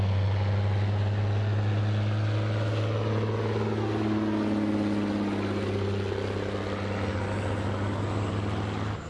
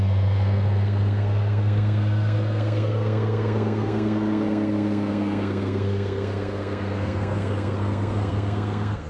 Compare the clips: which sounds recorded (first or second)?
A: first